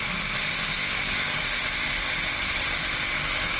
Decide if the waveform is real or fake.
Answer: real